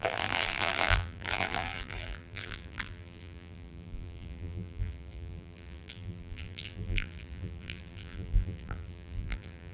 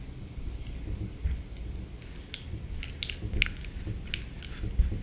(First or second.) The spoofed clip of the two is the first